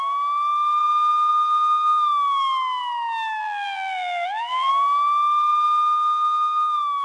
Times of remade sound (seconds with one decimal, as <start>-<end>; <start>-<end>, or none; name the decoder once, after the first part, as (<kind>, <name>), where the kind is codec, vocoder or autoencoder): 3.4-4.7 (vocoder, BigVGAN v2)